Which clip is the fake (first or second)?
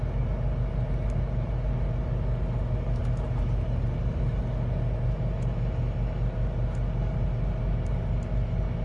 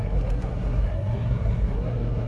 second